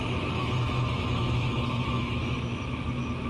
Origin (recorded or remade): remade